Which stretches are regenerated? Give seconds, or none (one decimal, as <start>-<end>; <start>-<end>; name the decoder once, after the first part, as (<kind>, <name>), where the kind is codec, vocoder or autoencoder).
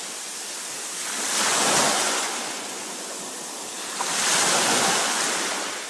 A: 1.5-3.3 (vocoder, Vocos); 4.6-5.2